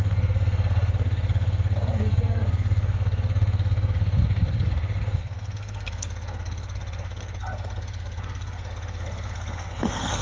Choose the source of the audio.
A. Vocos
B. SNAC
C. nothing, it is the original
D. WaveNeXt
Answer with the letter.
B